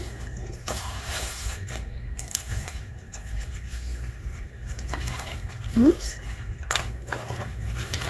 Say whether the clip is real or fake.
fake